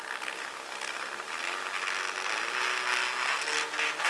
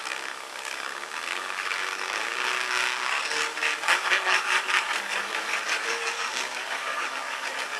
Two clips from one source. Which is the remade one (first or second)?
second